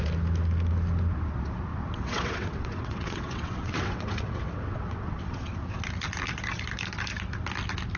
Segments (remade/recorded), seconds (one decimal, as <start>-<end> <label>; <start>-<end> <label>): 0.0-1.7 recorded; 1.7-5.8 remade; 5.8-8.0 recorded